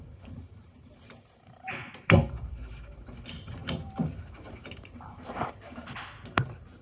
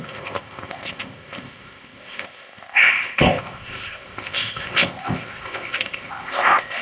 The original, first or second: first